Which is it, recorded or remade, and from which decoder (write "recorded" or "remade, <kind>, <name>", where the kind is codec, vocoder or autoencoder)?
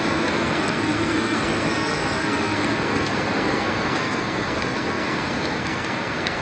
remade, codec, SNAC